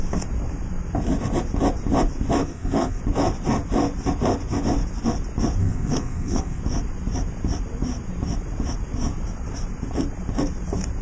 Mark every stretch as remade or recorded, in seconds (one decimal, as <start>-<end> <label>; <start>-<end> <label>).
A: 0.0-2.4 recorded; 2.4-3.0 remade; 3.0-5.6 recorded; 5.6-6.6 remade; 6.6-11.0 recorded